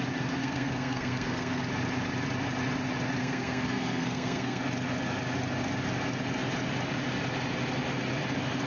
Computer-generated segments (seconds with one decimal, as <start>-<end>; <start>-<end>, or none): 0.4-1.6; 3.2-4.6